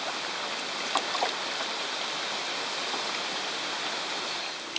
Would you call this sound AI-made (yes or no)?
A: no